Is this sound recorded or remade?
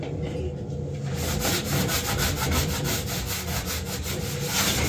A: recorded